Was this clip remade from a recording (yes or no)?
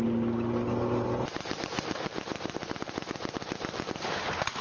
no